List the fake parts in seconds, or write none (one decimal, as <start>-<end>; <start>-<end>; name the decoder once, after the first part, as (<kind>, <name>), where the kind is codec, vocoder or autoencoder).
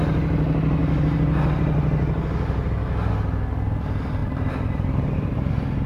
4.2-5.5 (vocoder, BigVGAN v2)